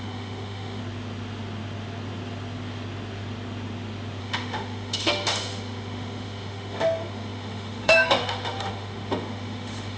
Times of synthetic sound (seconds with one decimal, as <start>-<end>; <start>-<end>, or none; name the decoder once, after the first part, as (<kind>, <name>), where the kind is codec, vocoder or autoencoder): 0.0-0.8 (autoencoder, DAC-VAE); 4.2-10.0